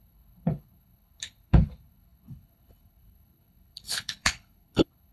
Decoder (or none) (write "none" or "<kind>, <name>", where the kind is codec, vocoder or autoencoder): codec, HILCodec